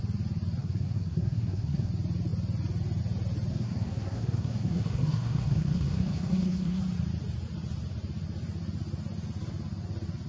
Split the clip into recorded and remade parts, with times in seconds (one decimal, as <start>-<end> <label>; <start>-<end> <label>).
0.0-0.6 recorded; 0.6-1.9 remade; 1.9-3.5 recorded; 3.5-6.8 remade; 6.8-10.3 recorded